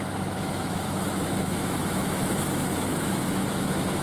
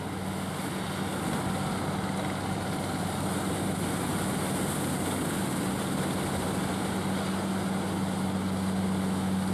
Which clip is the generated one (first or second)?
first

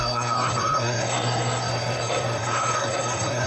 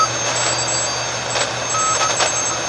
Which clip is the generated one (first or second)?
first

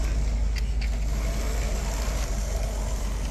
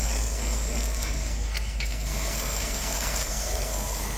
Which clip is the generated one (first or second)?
second